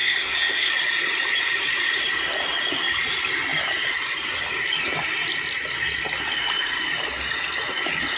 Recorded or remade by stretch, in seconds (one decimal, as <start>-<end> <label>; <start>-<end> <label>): 0.0-0.7 remade; 0.7-8.2 recorded